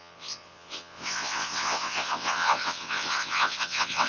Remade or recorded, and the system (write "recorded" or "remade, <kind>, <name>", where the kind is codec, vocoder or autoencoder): remade, vocoder, WaveNeXt